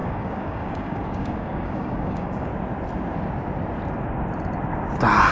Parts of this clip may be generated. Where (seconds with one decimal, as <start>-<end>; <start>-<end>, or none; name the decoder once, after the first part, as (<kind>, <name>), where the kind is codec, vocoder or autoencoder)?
0.0-2.5 (codec, DAC)